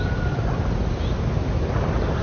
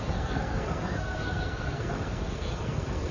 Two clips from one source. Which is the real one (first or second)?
first